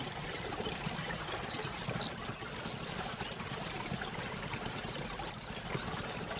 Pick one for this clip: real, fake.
real